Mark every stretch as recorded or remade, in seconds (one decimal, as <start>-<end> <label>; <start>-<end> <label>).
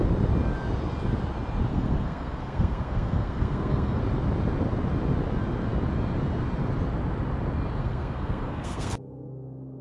0.0-1.7 recorded; 1.7-4.0 remade; 4.0-7.8 recorded; 7.8-9.8 remade